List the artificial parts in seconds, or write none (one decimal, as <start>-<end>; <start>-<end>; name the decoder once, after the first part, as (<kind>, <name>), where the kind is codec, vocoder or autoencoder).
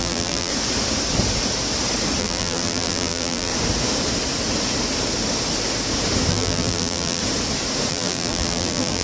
0.0-0.5 (vocoder, BigVGAN v2); 2.2-3.5; 6.3-7.2; 7.9-9.0